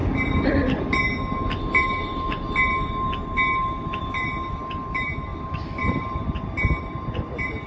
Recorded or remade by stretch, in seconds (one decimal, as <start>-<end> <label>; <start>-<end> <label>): 0.0-7.7 recorded